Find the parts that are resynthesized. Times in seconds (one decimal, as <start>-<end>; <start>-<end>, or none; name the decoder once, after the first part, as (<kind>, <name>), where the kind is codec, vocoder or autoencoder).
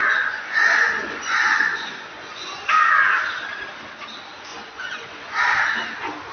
0.0-2.9 (vocoder, Vocos); 4.5-5.4